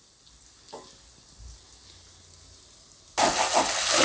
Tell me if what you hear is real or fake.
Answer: real